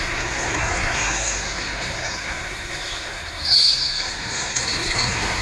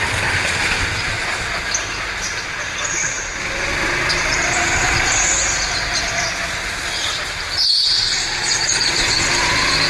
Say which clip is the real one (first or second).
second